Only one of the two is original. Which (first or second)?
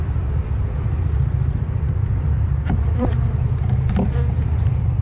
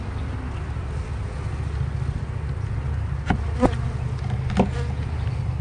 second